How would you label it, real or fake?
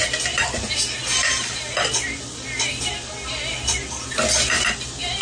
real